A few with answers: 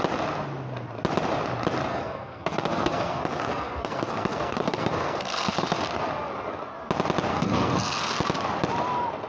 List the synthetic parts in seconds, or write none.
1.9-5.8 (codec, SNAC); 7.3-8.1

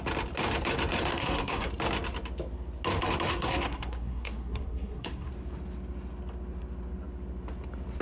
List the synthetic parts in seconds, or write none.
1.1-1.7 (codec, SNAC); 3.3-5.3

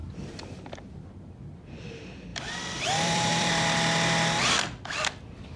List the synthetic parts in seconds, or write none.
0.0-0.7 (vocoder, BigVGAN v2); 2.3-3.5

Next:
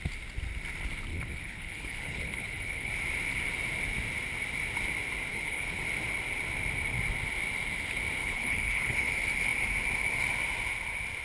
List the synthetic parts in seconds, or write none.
1.1-2.9 (codec, HILCodec); 5.3-5.8; 8.2-9.1

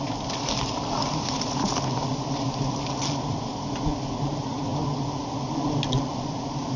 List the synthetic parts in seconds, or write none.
none